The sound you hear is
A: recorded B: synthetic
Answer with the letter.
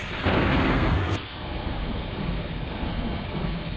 B